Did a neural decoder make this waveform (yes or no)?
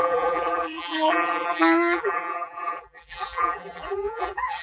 yes